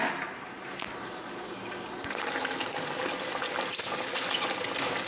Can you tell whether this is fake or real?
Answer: real